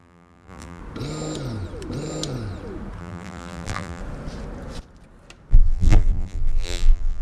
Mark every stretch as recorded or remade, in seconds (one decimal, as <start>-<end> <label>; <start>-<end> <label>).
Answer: 0.0-0.8 remade; 0.8-3.0 recorded; 3.0-4.0 remade; 4.0-5.5 recorded; 5.5-7.2 remade